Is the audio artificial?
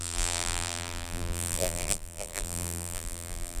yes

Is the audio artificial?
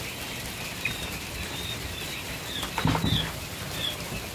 yes